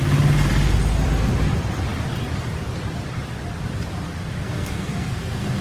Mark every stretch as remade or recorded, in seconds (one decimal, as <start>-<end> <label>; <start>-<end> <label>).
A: 0.0-4.4 recorded; 4.4-5.6 remade